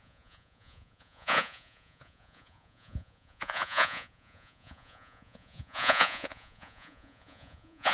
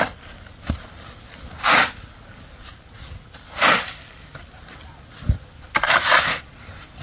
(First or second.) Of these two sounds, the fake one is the first